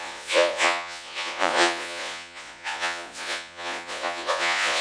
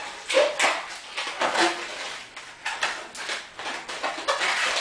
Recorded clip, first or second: second